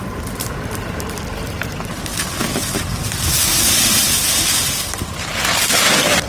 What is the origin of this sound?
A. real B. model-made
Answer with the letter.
A